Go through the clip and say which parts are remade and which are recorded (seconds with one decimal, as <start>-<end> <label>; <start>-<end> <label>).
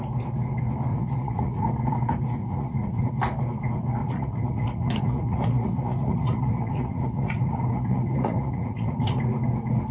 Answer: 0.0-0.9 recorded; 0.9-1.7 remade; 1.7-2.4 recorded; 2.4-3.1 remade; 3.1-4.0 recorded; 4.0-9.2 remade; 9.2-9.9 recorded